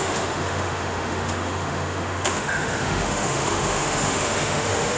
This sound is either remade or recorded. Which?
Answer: remade